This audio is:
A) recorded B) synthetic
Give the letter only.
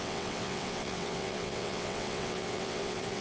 B